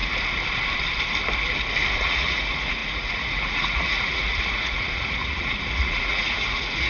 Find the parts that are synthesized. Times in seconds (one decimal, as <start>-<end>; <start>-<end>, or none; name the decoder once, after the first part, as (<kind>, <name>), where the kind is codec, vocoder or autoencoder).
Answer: 2.0-6.9 (vocoder, Vocos)